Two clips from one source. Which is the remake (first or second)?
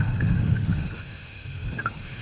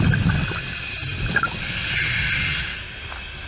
first